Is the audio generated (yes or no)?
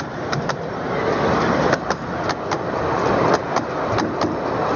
no